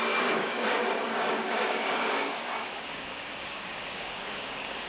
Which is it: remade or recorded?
remade